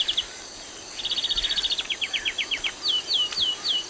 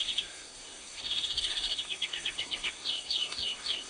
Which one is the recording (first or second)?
first